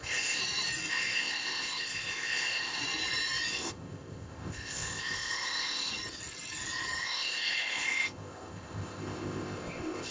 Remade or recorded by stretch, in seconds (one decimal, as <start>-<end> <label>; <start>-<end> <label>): 0.0-0.4 remade; 0.4-0.9 recorded; 0.9-2.8 remade; 2.8-3.5 recorded; 3.5-5.9 remade; 5.9-7.0 recorded; 7.0-10.1 remade